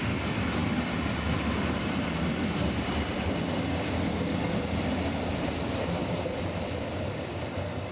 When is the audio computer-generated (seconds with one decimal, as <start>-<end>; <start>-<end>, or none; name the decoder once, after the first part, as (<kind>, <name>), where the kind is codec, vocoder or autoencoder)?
none